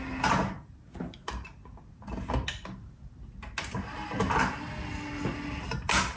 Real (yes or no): yes